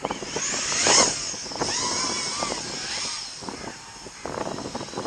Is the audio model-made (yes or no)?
no